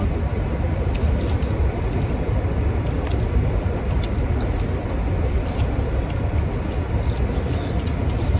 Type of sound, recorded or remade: recorded